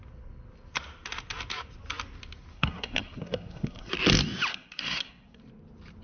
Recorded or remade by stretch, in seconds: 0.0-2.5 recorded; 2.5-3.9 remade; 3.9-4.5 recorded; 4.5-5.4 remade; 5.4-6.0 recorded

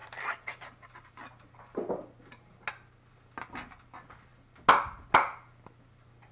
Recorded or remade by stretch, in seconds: 0.0-1.5 remade; 1.5-6.3 recorded

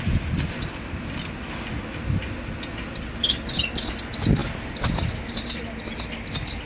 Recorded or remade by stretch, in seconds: 0.0-2.7 recorded; 2.7-3.2 remade; 3.2-6.7 recorded